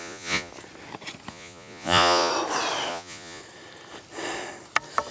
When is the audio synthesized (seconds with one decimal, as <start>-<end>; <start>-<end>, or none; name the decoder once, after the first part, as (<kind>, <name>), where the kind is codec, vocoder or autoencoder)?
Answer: 0.0-0.5 (vocoder, Vocos); 1.3-2.3; 2.9-3.4